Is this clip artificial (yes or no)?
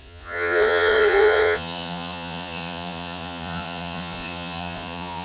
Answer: yes